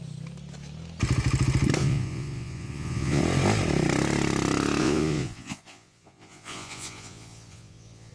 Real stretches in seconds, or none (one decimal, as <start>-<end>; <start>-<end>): 0.0-1.8; 3.2-4.8